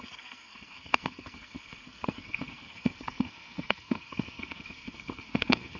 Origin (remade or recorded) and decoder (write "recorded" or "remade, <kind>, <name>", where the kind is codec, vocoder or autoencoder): remade, codec, SNAC